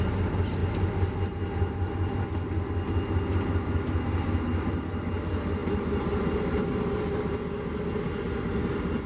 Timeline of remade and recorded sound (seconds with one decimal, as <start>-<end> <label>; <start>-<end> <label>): 0.0-9.1 recorded